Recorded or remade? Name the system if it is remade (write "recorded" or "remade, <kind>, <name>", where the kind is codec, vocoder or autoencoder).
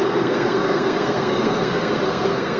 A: remade, codec, SNAC